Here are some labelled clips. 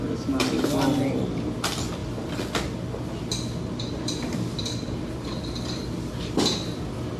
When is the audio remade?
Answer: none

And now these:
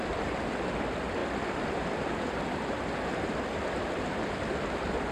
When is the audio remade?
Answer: 0.0-5.1 (vocoder, BigVGAN v2)

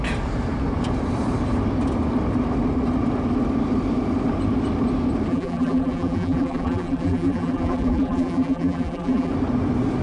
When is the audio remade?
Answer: 5.3-9.3 (vocoder, BigVGAN v2)